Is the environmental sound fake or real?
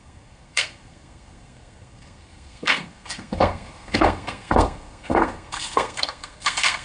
fake